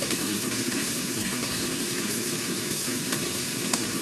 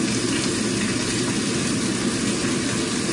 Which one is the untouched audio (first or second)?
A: second